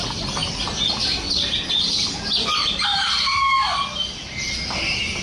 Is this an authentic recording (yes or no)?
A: yes